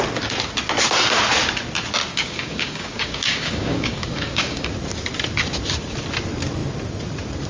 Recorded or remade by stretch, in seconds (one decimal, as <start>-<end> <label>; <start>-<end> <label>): 0.0-2.1 recorded; 2.1-4.7 remade; 4.7-7.5 recorded